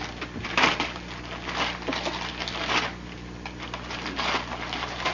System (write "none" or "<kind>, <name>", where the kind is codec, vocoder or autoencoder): none